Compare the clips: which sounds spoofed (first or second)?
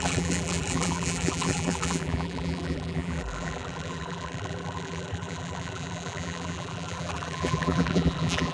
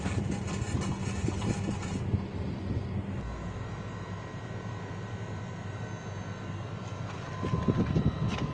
first